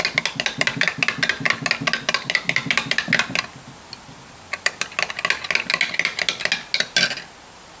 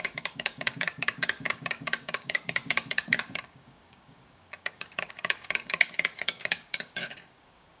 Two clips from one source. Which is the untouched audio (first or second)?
first